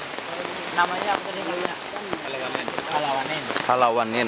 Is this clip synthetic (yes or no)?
no